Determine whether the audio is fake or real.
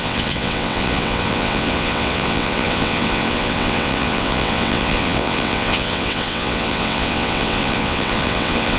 fake